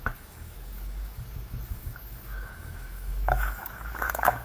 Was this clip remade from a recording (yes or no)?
yes